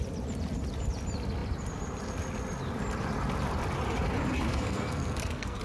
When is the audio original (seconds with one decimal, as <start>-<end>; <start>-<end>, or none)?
0.0-4.5